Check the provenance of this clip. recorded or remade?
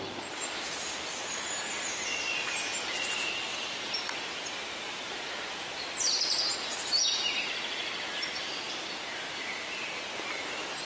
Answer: recorded